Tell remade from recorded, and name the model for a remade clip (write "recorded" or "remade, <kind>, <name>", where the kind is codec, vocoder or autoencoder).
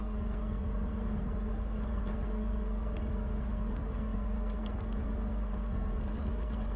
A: remade, codec, SNAC